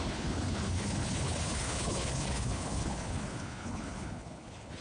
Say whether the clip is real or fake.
fake